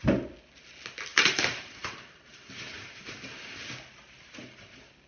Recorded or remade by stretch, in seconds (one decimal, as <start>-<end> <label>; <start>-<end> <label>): 0.0-1.1 recorded; 1.1-3.7 remade; 3.7-5.1 recorded

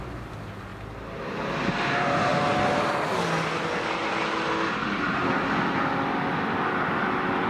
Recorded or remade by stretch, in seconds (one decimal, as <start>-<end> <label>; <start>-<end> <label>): 0.0-7.5 recorded

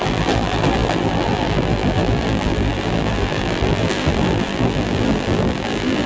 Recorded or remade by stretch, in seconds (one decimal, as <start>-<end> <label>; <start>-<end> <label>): 0.0-6.1 remade

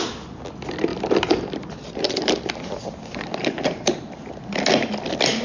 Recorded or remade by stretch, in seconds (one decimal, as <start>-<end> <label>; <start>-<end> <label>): 0.0-0.9 recorded; 0.9-3.9 remade; 3.9-5.4 recorded

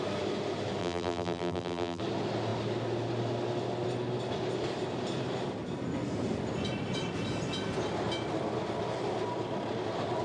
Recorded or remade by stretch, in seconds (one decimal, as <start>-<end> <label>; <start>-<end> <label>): 0.0-0.8 recorded; 0.8-2.0 remade; 2.0-10.2 recorded